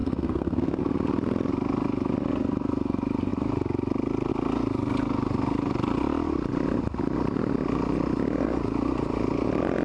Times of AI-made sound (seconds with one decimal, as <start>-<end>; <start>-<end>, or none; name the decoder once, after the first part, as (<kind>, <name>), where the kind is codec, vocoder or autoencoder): 0.0-0.8 (codec, SNAC)

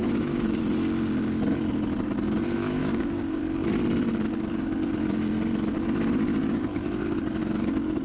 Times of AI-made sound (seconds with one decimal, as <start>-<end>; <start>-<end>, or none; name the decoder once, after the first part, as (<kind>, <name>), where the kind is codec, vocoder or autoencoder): 0.0-0.6 (codec, DAC); 2.8-3.4